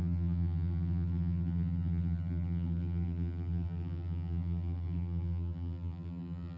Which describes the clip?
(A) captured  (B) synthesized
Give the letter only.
B